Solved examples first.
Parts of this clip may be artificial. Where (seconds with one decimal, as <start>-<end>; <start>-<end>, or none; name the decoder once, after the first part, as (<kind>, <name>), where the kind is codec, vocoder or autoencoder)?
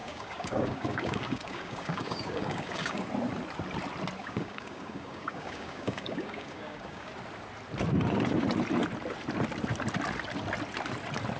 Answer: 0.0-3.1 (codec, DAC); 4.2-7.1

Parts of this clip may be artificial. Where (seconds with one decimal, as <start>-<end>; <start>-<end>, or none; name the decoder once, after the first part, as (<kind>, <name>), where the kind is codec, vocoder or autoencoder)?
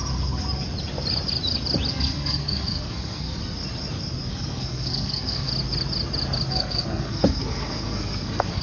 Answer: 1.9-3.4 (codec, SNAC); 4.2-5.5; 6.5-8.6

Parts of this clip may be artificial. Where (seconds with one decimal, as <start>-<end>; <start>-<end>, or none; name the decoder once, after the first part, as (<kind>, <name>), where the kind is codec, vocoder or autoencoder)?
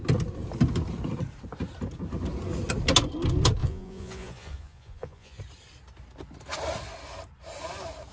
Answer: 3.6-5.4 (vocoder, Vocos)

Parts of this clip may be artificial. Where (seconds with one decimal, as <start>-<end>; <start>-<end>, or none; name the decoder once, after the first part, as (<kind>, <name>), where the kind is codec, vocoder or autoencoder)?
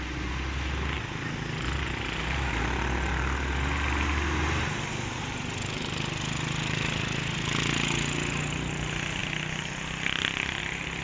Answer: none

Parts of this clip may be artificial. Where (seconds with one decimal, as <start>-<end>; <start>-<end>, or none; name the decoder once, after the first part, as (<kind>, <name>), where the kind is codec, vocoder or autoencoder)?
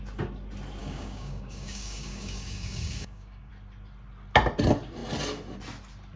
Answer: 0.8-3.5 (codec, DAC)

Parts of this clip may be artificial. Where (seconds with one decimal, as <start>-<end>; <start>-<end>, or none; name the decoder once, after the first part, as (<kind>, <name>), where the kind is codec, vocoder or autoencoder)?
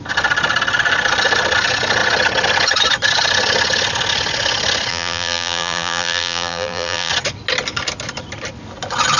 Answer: 4.9-7.1 (vocoder, BigVGAN v2)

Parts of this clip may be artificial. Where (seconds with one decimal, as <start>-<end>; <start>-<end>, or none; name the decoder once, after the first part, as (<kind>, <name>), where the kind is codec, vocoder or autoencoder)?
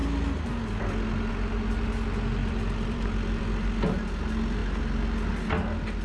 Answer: 2.4-3.4 (vocoder, BigVGAN v2); 4.6-5.3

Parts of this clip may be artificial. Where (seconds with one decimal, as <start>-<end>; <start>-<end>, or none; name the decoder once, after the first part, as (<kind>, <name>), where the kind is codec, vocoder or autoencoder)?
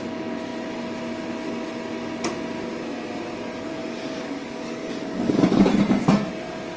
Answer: 3.8-5.7 (codec, DAC)